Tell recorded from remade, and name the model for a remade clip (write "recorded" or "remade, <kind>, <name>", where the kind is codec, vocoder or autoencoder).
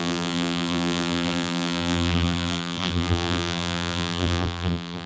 remade, vocoder, BigVGAN v2